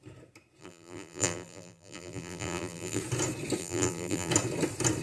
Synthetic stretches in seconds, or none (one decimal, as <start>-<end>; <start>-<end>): 0.6-3.0; 3.6-4.3